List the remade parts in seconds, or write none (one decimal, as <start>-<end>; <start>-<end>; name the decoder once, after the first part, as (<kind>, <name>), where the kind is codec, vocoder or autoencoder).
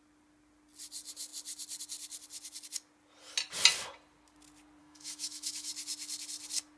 4.8-5.7 (autoencoder, DAC-VAE)